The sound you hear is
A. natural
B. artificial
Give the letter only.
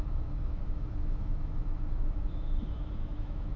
B